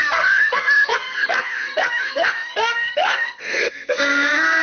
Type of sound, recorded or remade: remade